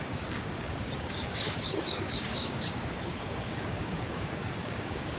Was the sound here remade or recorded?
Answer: remade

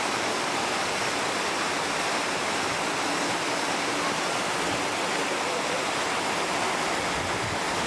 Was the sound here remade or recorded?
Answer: recorded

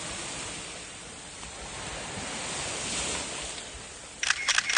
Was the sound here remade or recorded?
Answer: recorded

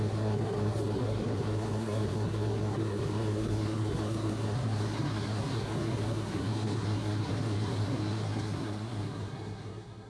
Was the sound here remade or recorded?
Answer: remade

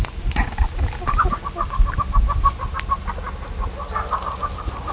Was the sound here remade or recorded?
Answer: recorded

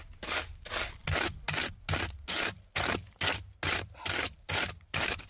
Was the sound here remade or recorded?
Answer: recorded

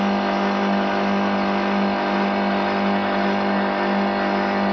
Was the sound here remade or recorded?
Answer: recorded